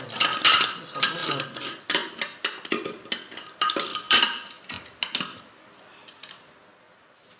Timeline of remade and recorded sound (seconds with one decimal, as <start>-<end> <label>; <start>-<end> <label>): 0.0-1.2 recorded; 1.2-1.8 remade; 1.8-3.9 recorded; 3.9-4.5 remade; 4.5-7.4 recorded